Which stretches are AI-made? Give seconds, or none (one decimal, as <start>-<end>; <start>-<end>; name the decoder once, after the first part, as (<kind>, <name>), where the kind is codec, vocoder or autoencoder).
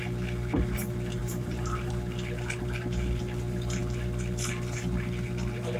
1.2-1.9 (vocoder, BigVGAN v2)